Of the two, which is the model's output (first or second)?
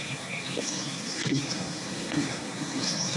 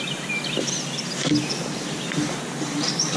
first